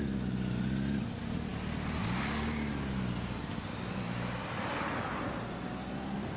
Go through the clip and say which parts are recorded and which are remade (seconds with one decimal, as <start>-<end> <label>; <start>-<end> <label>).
0.0-6.4 recorded